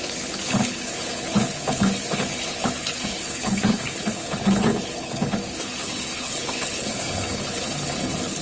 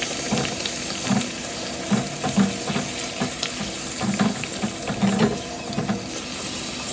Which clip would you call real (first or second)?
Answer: second